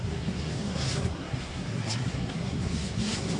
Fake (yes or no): yes